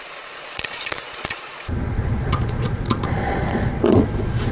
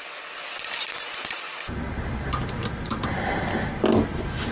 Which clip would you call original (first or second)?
second